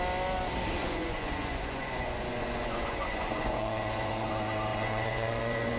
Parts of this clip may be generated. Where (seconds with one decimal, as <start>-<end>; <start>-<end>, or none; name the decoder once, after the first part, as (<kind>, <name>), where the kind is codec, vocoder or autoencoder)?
0.8-4.3 (vocoder, Vocos); 4.7-5.8